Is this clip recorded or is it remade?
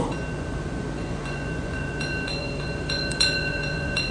remade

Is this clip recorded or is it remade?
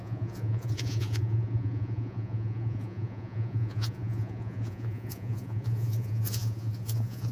remade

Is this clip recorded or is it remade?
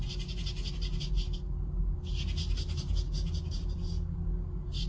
recorded